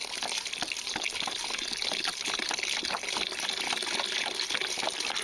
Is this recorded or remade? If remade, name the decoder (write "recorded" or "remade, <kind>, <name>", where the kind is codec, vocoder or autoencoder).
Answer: recorded